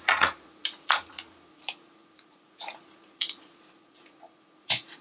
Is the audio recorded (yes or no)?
no